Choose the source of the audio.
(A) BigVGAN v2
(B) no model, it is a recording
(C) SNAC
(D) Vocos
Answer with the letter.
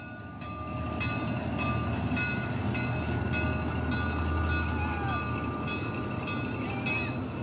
B